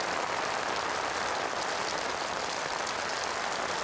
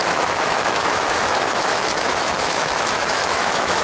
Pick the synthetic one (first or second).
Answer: second